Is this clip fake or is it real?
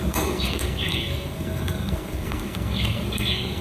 fake